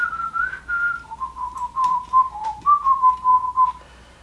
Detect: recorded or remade recorded